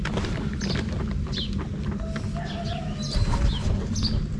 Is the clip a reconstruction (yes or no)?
no